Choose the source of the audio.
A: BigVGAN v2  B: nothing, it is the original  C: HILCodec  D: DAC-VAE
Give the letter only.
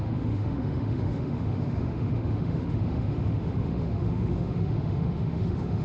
D